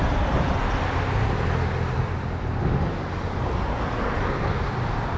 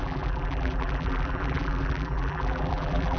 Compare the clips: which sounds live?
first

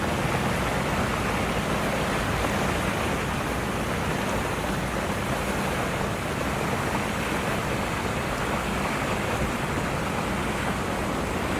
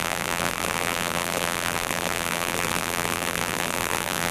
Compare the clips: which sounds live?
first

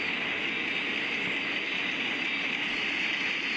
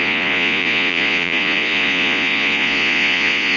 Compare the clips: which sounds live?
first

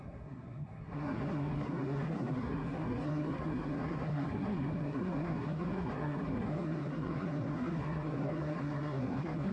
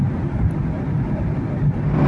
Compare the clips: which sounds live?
second